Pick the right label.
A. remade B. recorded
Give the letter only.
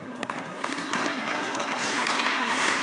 A